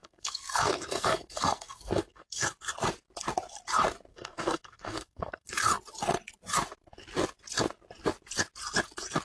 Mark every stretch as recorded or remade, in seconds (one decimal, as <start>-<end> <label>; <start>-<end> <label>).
0.0-2.5 remade; 2.5-4.1 recorded; 4.1-5.5 remade; 5.5-9.2 recorded

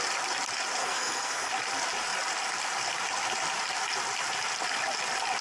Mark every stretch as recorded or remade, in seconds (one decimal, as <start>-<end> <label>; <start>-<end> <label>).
0.0-0.8 recorded; 0.8-1.5 remade; 1.5-5.4 recorded